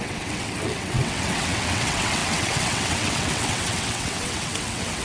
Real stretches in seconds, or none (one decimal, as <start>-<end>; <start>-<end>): none